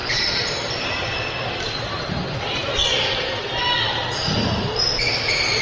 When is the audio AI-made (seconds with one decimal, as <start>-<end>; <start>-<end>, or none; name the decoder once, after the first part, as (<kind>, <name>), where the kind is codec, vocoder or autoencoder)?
none